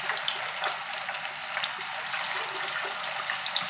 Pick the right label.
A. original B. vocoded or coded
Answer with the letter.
A